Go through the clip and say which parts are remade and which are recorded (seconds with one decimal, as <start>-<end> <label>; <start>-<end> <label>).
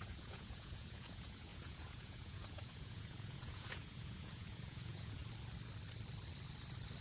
0.0-5.2 remade; 5.2-7.0 recorded